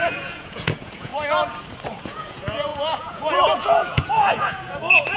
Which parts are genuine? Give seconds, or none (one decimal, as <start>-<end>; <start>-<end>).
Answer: 1.1-2.0